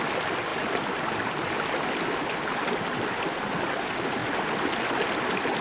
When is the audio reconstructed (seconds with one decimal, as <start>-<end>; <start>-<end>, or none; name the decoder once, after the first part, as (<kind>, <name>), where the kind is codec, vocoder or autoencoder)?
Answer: none